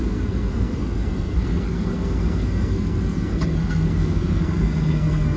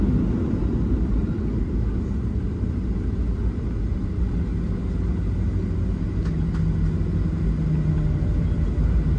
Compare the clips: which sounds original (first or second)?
second